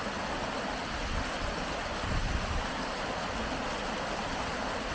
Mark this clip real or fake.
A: real